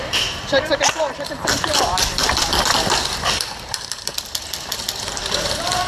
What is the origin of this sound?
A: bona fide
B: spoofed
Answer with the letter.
B